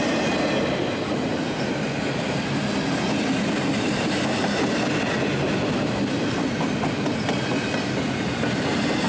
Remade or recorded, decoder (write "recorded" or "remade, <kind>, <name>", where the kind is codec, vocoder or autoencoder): recorded